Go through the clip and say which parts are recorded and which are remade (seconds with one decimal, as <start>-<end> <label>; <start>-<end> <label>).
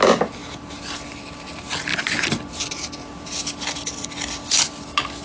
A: 0.0-5.2 recorded